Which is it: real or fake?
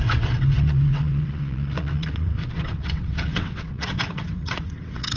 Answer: fake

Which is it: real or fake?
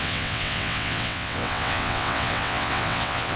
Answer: fake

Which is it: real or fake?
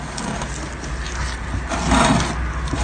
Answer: real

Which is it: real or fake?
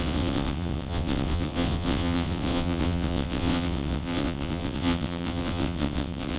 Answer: fake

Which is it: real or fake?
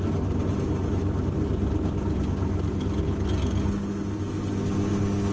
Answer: real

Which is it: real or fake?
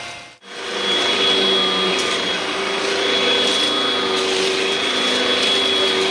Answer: real